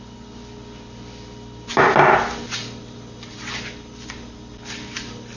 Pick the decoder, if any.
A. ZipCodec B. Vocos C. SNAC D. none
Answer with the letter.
D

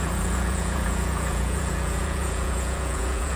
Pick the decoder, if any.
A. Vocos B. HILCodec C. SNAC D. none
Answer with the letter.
A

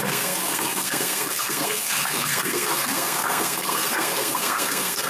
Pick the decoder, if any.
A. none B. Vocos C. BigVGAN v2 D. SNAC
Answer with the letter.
D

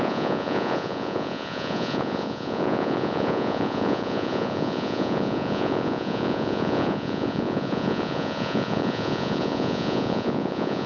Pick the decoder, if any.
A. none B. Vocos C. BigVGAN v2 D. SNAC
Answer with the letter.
B